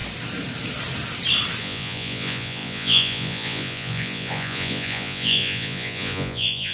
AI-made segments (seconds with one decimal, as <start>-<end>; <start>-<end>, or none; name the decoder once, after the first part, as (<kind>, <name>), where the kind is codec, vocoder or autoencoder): 1.6-6.7 (vocoder, Vocos)